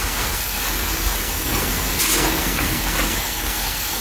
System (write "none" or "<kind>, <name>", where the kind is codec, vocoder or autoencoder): codec, SNAC